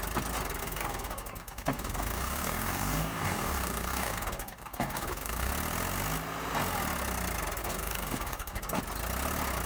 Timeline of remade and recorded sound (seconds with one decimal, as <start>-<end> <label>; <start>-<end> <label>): 0.0-0.6 recorded; 0.6-5.5 remade; 5.5-7.6 recorded; 7.6-8.8 remade; 8.8-9.7 recorded